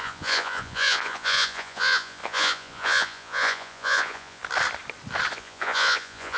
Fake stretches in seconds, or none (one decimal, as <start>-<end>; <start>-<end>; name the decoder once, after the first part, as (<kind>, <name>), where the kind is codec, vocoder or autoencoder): 0.0-4.4 (vocoder, Vocos); 5.3-6.4